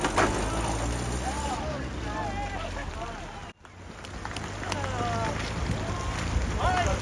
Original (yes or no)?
yes